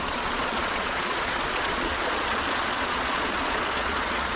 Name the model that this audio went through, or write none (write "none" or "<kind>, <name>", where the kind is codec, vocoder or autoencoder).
vocoder, Vocos